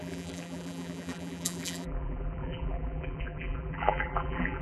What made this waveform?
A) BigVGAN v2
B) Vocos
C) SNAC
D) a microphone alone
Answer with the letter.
A